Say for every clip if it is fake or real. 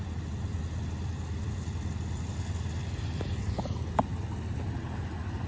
real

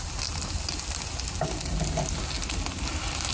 real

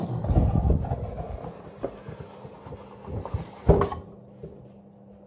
real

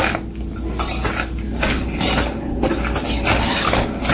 real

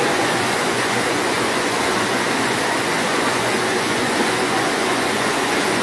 fake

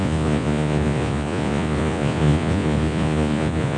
fake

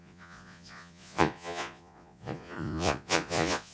fake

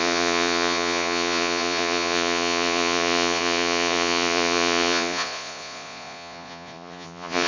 fake